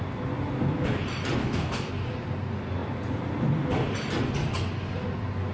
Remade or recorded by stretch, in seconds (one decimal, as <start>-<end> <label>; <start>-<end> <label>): 0.0-1.4 recorded; 1.4-1.9 remade; 1.9-5.5 recorded